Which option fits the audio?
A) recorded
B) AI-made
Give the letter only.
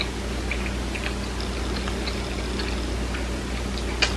A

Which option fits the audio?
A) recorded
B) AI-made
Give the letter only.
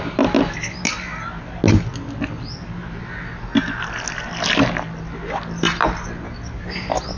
A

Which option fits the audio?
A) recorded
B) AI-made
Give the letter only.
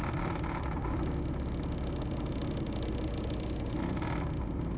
A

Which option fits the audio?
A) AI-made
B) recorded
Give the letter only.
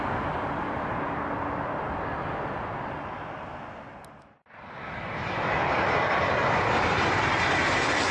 B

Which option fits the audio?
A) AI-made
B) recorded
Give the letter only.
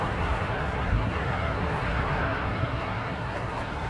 A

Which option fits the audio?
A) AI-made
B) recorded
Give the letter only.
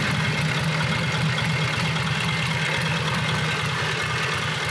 B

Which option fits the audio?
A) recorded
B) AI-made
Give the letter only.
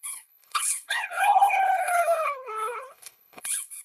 B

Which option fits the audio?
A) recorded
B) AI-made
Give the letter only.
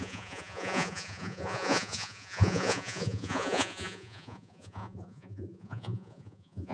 B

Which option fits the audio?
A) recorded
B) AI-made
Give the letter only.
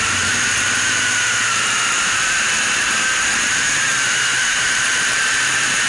B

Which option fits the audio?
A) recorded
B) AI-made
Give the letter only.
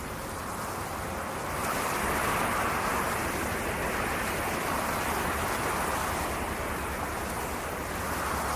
A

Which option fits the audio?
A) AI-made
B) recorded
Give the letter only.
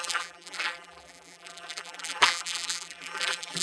A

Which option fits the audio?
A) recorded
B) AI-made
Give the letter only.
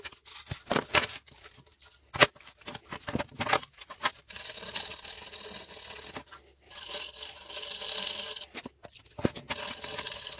A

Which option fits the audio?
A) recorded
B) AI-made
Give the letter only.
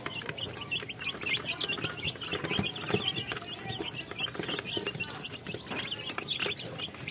A